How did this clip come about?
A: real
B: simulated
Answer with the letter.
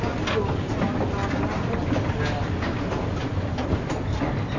A